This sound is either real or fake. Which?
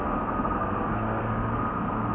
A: fake